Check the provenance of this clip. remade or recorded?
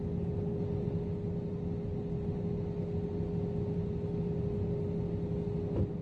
recorded